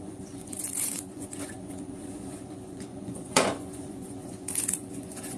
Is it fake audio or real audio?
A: fake